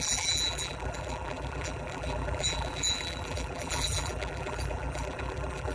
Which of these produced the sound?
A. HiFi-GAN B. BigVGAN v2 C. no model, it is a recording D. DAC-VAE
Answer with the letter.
B